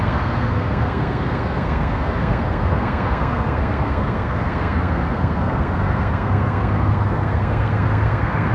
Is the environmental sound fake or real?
fake